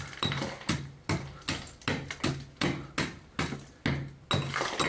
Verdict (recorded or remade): recorded